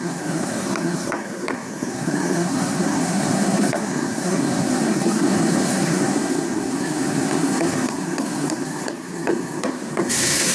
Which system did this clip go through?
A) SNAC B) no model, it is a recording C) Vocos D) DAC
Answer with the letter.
A